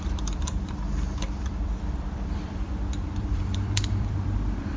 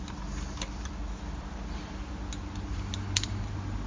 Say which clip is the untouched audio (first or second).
second